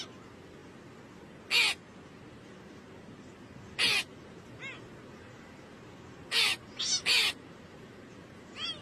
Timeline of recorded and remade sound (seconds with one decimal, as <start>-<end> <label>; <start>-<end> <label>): 0.0-8.8 recorded